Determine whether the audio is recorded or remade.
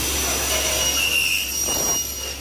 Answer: recorded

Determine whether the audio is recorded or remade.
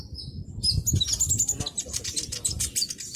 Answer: recorded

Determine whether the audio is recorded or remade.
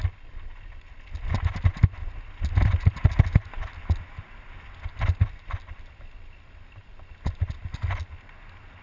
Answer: recorded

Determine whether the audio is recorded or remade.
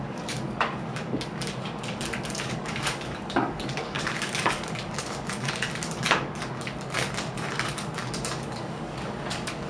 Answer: remade